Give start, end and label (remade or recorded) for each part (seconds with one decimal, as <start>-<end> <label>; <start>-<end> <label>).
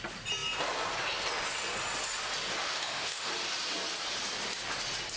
0.0-2.6 recorded; 2.6-3.3 remade; 3.3-5.2 recorded